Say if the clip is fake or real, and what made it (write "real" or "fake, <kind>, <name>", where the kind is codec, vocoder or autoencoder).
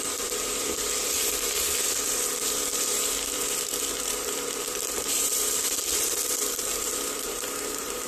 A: fake, vocoder, BigVGAN v2